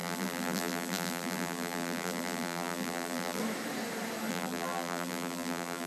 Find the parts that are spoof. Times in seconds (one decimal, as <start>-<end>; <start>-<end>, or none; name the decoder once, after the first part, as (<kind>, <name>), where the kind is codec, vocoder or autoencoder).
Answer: 0.0-3.4 (vocoder, BigVGAN v2); 4.3-5.9